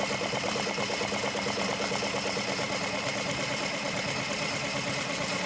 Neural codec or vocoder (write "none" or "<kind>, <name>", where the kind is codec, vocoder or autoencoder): none